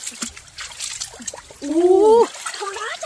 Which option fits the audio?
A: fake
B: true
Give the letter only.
B